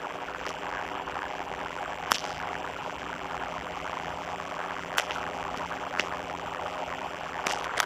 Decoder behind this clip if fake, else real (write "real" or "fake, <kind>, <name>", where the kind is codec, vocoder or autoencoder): fake, vocoder, BigVGAN v2